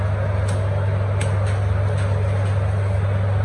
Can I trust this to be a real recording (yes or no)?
yes